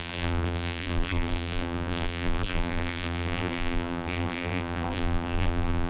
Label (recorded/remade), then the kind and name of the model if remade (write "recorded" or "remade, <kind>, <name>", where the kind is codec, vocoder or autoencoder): remade, vocoder, BigVGAN v2